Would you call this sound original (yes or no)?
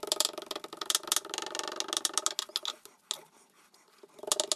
yes